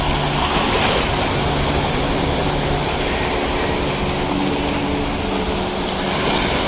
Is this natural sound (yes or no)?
yes